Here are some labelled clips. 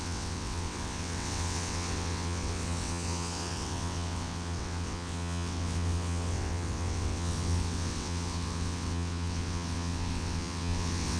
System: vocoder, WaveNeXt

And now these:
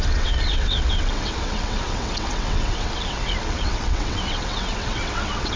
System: vocoder, WaveNeXt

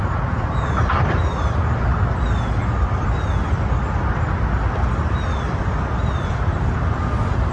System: none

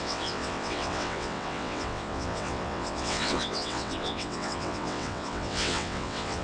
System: vocoder, WaveNeXt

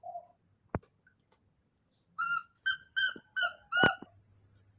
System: none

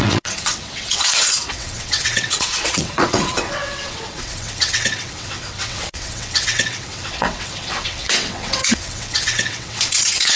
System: vocoder, WaveNeXt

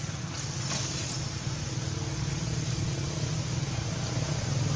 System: none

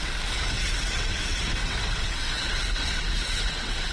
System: vocoder, WaveNeXt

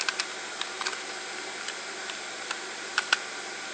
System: none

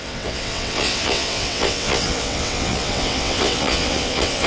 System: vocoder, WaveNeXt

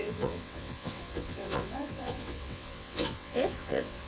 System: vocoder, WaveNeXt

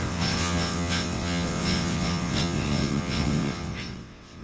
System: vocoder, WaveNeXt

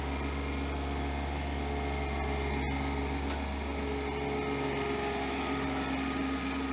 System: none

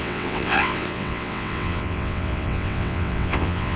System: vocoder, WaveNeXt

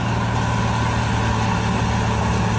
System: none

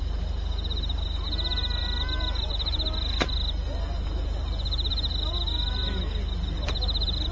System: none